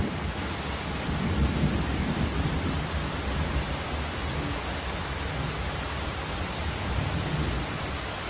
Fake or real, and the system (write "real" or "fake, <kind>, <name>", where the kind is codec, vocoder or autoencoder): real